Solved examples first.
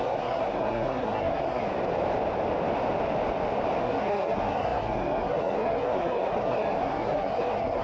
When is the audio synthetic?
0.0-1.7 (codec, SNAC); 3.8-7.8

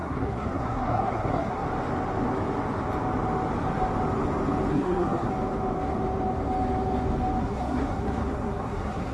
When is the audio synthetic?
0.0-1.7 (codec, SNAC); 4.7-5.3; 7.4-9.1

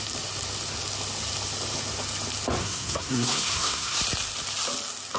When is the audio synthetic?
2.6-4.0 (codec, SNAC)

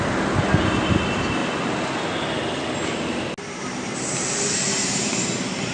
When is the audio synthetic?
none

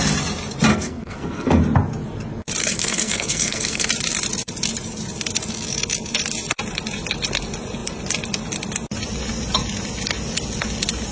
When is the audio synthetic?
0.7-1.6 (codec, SNAC); 2.6-3.9

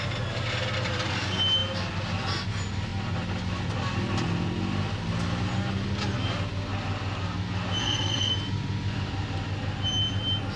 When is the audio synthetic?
7.8-8.3 (codec, SNAC)